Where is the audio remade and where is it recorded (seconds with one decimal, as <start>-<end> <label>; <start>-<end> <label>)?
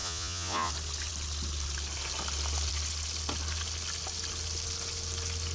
0.0-0.7 remade; 0.7-5.5 recorded